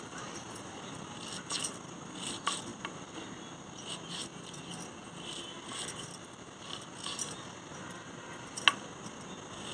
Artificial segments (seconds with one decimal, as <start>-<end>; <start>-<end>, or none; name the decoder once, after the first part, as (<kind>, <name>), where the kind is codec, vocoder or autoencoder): none